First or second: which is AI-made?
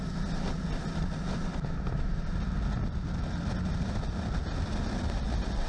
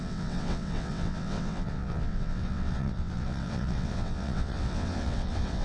second